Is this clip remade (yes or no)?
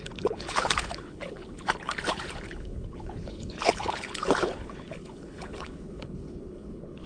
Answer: yes